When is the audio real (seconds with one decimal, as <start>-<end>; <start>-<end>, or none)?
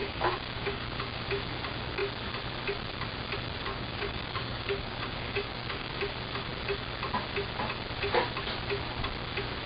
1.2-3.7; 5.9-9.7